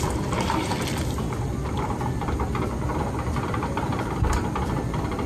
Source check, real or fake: fake